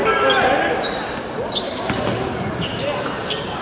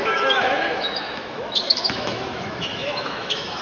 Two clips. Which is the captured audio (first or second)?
first